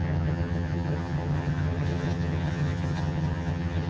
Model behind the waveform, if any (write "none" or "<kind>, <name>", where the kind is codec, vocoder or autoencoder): vocoder, HiFi-GAN